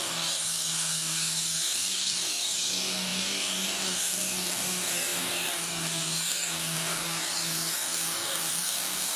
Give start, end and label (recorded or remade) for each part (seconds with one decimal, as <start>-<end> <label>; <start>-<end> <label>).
0.0-9.2 remade